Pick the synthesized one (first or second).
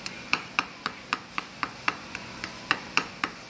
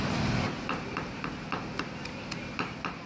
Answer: first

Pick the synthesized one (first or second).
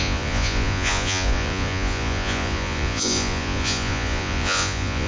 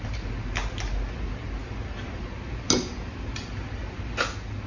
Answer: first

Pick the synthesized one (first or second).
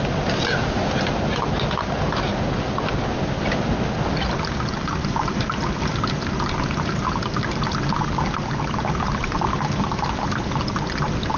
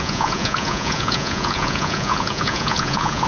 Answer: second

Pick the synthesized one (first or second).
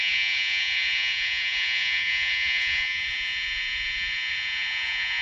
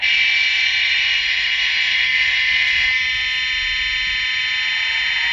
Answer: first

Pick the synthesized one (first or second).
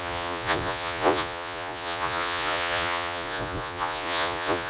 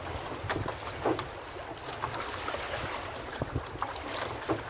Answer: first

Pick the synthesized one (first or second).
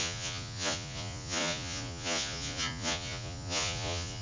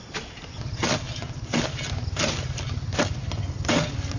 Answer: first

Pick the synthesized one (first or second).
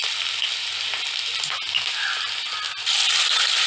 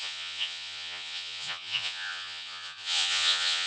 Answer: second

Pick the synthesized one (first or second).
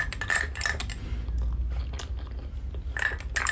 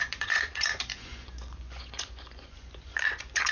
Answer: second